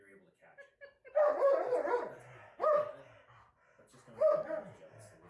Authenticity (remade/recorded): recorded